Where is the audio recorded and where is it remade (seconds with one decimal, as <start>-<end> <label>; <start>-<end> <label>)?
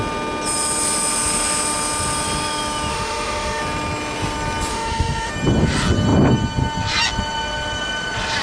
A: 0.0-2.9 recorded; 2.9-3.6 remade; 3.6-4.7 recorded; 4.7-5.3 remade; 5.3-8.4 recorded